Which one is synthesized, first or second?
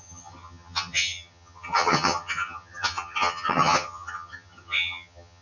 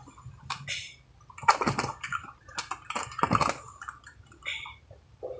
first